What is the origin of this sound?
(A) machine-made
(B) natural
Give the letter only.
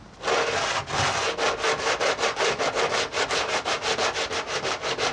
B